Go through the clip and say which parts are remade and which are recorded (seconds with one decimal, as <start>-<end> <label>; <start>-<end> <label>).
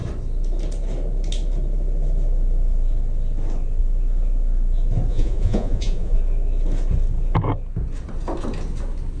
0.0-5.1 recorded; 5.1-6.2 remade; 6.2-9.2 recorded